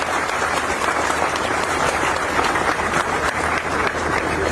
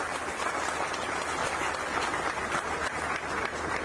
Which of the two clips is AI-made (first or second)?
first